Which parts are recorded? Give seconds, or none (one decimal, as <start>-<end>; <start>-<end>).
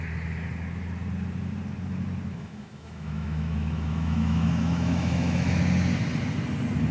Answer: 0.0-2.3; 5.6-6.9